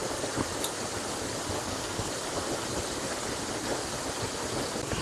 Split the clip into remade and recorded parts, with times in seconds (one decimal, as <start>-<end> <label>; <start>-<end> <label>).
0.0-1.6 recorded; 1.6-2.1 remade; 2.1-5.0 recorded